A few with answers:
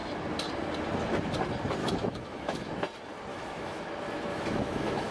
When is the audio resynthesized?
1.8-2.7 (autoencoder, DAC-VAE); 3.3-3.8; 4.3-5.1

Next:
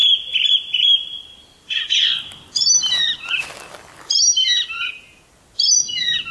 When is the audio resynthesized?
none

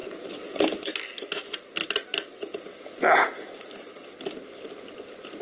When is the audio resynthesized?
0.0-0.8 (vocoder, BigVGAN v2)